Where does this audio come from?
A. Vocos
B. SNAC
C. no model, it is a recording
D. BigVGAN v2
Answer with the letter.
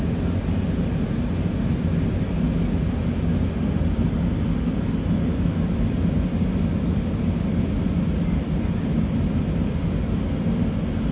C